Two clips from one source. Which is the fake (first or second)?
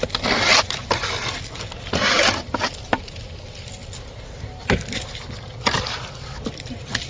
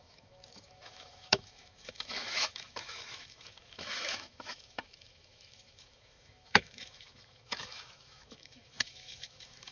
second